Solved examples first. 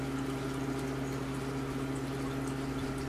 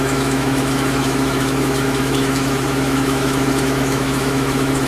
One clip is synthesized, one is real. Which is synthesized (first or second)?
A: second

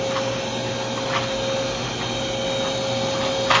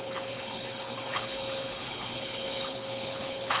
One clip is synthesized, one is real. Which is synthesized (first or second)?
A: second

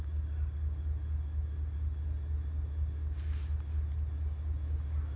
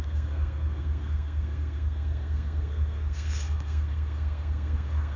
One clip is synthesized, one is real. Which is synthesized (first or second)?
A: second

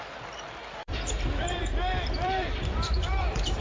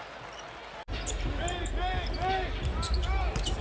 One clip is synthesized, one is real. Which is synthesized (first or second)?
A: first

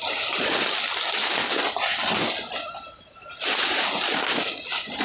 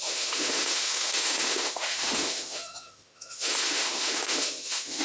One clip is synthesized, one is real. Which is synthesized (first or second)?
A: second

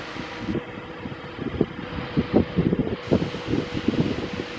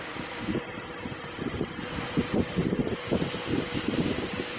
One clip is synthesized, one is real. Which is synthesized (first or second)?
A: second